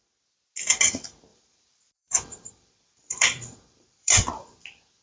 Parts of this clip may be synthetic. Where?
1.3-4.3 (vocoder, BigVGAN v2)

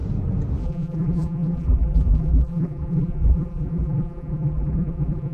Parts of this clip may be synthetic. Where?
0.6-5.3 (vocoder, BigVGAN v2)

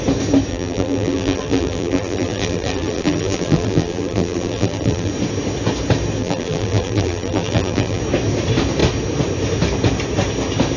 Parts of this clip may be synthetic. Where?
0.5-5.1 (vocoder, BigVGAN v2); 6.2-8.0

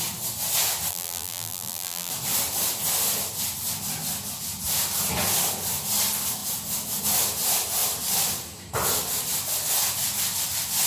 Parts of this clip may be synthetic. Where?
0.9-2.1 (vocoder, BigVGAN v2)

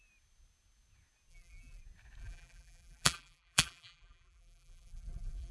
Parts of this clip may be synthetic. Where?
1.3-1.8 (vocoder, BigVGAN v2); 2.2-5.5

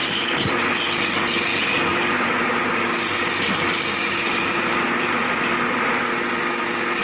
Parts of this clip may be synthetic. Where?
0.0-0.6 (vocoder, BigVGAN v2); 1.9-6.1

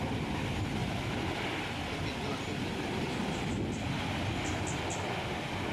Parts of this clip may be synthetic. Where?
none

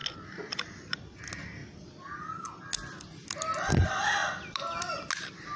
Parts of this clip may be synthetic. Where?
1.6-2.6 (vocoder, BigVGAN v2); 4.2-4.9